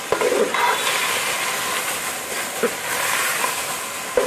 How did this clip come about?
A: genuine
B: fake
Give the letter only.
A